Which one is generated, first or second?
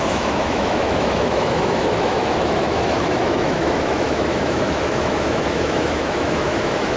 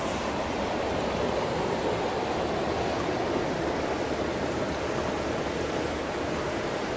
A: first